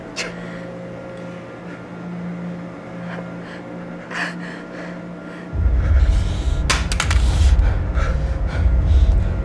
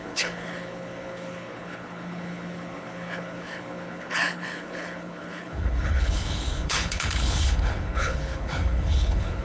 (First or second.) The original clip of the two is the first